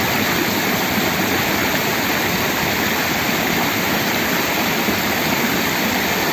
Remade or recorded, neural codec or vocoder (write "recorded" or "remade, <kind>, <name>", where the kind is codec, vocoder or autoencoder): remade, vocoder, BigVGAN v2